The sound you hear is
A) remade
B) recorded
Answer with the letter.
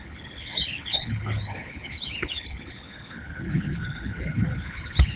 A